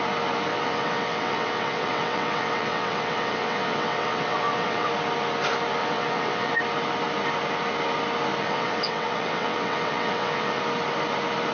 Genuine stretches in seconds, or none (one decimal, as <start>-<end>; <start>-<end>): 0.0-0.5; 4.9-5.8; 6.5-8.4; 10.6-11.5

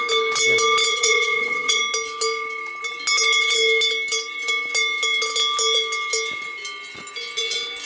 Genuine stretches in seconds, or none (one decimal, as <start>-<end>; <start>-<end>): 0.0-0.9; 1.8-7.9

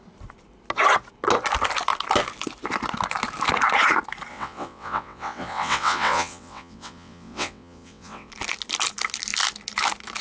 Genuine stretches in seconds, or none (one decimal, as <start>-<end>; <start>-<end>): 0.0-4.3; 8.3-10.2

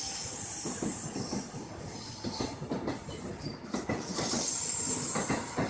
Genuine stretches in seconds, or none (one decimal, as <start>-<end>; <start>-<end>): 0.0-5.7

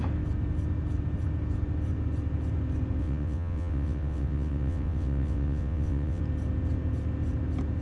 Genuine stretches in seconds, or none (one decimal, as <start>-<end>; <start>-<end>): 0.0-3.0; 6.2-7.8